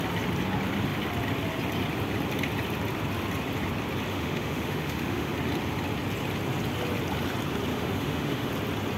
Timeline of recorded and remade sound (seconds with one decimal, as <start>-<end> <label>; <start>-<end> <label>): 0.0-4.1 recorded; 4.1-5.3 remade; 5.3-7.7 recorded; 7.7-8.5 remade; 8.5-9.0 recorded